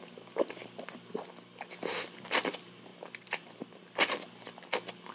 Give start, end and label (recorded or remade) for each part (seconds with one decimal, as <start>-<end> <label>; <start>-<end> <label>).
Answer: 0.0-2.9 recorded; 2.9-3.7 remade; 3.7-5.1 recorded